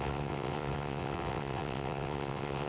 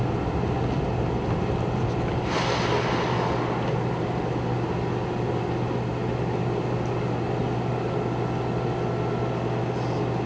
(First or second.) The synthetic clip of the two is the first